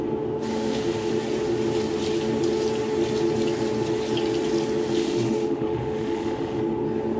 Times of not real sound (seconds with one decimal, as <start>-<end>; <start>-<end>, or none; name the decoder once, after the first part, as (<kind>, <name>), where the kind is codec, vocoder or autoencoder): 0.5-1.1 (autoencoder, DAC-VAE); 4.8-6.6